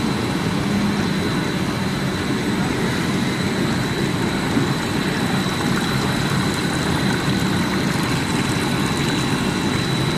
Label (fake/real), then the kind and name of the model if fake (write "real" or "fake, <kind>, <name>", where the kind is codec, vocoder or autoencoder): real